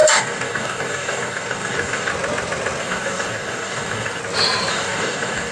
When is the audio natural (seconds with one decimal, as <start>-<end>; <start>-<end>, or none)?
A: 2.1-2.8; 4.2-4.7